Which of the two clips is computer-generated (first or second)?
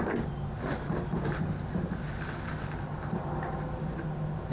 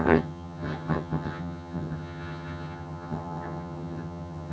second